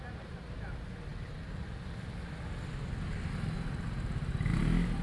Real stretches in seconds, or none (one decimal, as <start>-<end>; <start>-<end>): 0.0-5.0